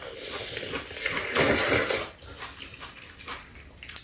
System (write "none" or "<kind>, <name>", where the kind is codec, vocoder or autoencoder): none